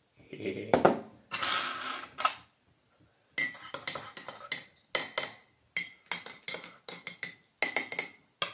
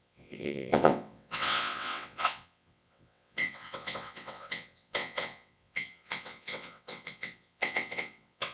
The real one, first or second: first